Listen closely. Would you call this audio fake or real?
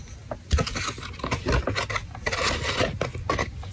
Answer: real